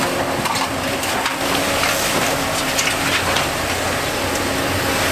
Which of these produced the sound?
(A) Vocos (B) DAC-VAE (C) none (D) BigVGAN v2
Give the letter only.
C